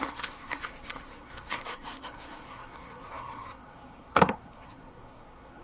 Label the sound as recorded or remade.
remade